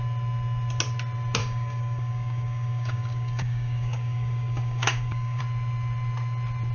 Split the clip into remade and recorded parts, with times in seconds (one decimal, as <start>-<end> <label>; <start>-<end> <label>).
0.0-1.4 recorded; 1.4-5.4 remade; 5.4-6.7 recorded